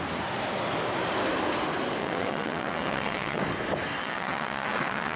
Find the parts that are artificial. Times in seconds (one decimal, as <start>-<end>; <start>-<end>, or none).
2.0-3.4; 4.0-5.2